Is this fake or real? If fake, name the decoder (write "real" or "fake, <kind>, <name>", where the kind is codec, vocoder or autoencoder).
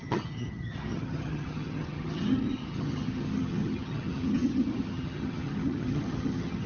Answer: fake, vocoder, HiFi-GAN